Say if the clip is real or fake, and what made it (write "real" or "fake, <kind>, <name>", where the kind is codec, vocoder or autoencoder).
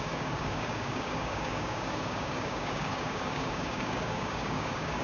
fake, codec, DAC